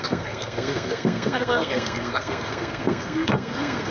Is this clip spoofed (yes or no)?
yes